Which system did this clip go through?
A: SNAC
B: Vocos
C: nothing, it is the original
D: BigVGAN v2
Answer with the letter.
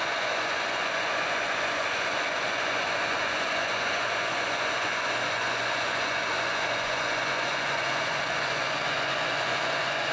B